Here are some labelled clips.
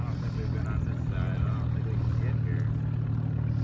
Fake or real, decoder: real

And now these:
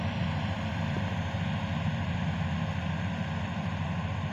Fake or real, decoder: real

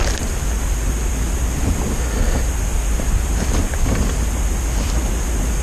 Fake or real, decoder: real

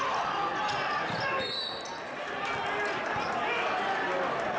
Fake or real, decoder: real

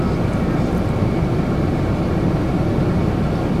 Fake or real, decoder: real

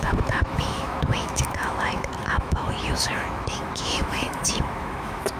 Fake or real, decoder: fake, autoencoder, DAC-VAE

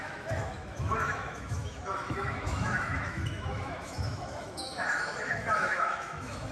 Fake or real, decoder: fake, autoencoder, DAC-VAE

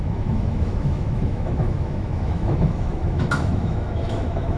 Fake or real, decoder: fake, autoencoder, DAC-VAE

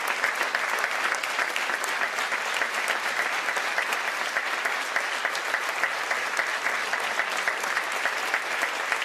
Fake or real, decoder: real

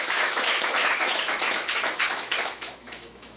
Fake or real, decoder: fake, autoencoder, DAC-VAE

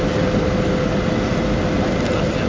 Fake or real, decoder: real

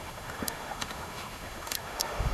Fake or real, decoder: fake, autoencoder, DAC-VAE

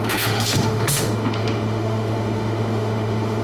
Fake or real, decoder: fake, autoencoder, DAC-VAE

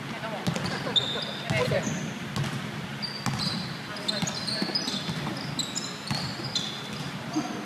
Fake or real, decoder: real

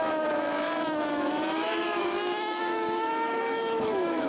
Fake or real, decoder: fake, autoencoder, DAC-VAE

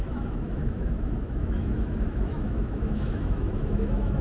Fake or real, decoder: fake, autoencoder, DAC-VAE